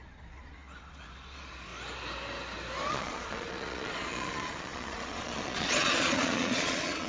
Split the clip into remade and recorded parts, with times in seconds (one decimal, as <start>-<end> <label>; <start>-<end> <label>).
0.0-1.7 remade; 1.7-2.9 recorded; 2.9-7.1 remade